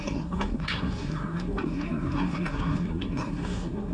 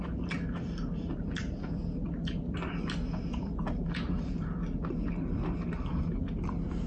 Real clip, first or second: second